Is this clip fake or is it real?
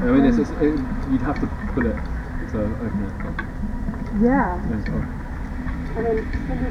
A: real